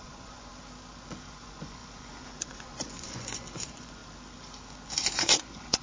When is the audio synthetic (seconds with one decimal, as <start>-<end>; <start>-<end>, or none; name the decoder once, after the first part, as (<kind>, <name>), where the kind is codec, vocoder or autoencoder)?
0.0-0.5 (vocoder, Vocos); 1.3-4.0; 4.7-5.8